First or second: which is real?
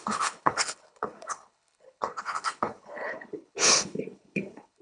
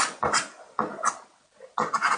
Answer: second